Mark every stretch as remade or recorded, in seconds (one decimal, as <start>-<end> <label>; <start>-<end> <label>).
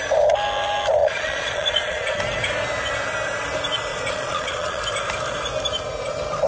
0.0-1.0 recorded; 1.0-2.2 remade; 2.2-3.9 recorded; 3.9-4.8 remade; 4.8-6.5 recorded